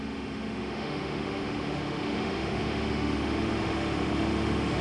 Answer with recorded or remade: remade